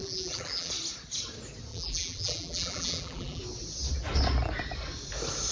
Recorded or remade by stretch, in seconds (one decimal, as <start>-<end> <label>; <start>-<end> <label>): 0.0-0.7 remade; 0.7-1.7 recorded; 1.7-3.4 remade; 3.4-5.5 recorded